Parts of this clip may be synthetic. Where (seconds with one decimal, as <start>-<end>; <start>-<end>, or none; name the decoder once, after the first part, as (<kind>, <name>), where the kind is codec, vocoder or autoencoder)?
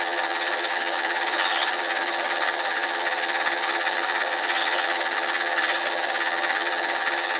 0.0-7.4 (vocoder, HiFi-GAN)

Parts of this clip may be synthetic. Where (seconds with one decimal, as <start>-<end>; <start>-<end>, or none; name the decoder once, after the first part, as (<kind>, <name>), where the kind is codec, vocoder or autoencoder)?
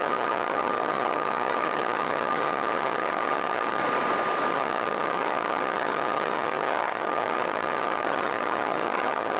0.0-3.8 (vocoder, HiFi-GAN); 4.5-9.4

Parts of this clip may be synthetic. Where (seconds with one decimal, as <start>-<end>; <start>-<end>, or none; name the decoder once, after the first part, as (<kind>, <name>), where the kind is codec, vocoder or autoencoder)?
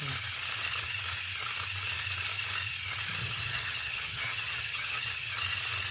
3.2-5.3 (vocoder, HiFi-GAN)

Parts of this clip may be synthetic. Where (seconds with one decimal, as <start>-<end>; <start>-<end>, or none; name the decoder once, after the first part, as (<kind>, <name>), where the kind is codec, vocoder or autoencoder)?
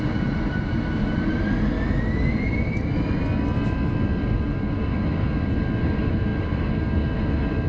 none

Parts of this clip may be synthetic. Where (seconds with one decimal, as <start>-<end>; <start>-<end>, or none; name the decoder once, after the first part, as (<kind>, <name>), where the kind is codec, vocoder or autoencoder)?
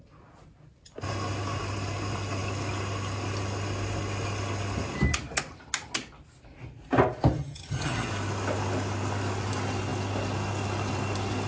7.4-8.1 (vocoder, HiFi-GAN)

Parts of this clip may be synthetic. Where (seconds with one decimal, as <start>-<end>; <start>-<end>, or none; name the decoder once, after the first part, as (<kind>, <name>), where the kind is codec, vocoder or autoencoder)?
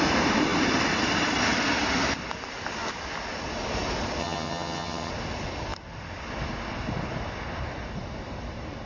4.2-5.1 (vocoder, HiFi-GAN)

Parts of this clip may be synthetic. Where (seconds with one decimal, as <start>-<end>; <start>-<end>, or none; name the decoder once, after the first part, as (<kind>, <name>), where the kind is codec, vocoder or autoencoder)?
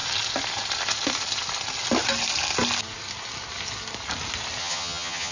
4.6-5.3 (vocoder, HiFi-GAN)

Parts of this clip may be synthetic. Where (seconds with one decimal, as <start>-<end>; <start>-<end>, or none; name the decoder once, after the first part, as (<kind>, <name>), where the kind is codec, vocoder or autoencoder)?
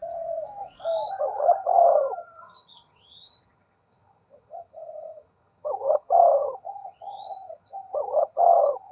1.1-8.9 (vocoder, HiFi-GAN)